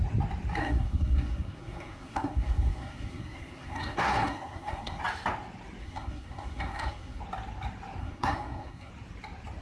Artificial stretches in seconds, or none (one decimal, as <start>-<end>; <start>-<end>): 0.6-5.0; 5.8-7.2; 8.0-8.9